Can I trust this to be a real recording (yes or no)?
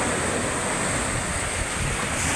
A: yes